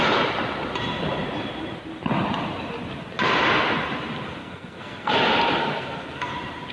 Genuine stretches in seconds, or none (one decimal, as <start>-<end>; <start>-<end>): 0.0-4.4; 5.1-5.6; 6.3-6.7